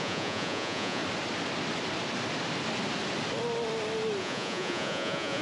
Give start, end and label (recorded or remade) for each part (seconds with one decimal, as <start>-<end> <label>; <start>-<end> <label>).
0.0-1.0 remade; 1.0-4.2 recorded; 4.2-5.4 remade